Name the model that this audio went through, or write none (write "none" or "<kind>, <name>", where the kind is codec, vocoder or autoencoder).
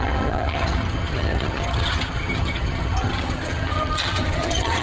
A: vocoder, HiFi-GAN